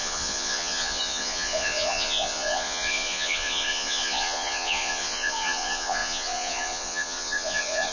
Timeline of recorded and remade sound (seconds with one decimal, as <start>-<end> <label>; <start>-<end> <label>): 0.0-7.9 remade